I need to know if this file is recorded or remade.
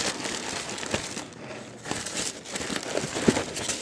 recorded